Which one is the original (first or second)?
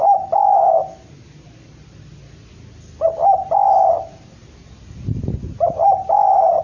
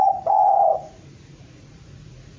first